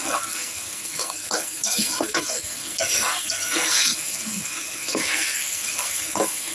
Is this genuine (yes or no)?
no